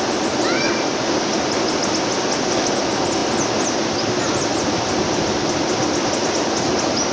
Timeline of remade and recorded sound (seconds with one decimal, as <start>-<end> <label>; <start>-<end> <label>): 0.0-7.1 recorded